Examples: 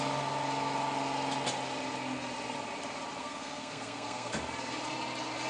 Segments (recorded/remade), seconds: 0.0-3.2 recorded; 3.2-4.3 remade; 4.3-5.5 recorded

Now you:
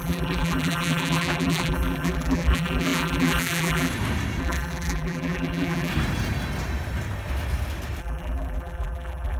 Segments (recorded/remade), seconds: 0.0-3.9 remade; 3.9-4.4 recorded; 4.4-5.9 remade; 5.9-8.0 recorded; 8.0-9.4 remade

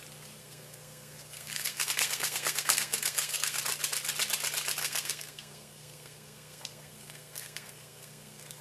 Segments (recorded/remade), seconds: 0.0-0.4 recorded; 0.4-3.6 remade; 3.6-4.8 recorded; 4.8-8.6 remade

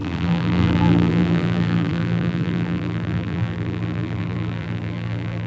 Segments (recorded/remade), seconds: 0.0-5.5 remade

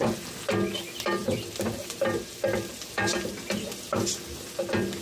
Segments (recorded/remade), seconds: 0.0-1.2 recorded; 1.2-2.4 remade; 2.4-3.1 recorded; 3.1-4.2 remade; 4.2-5.0 recorded